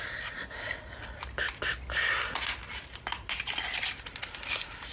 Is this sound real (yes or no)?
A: yes